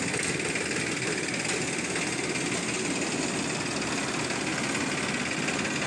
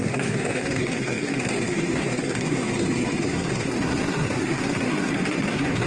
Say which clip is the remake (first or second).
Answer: second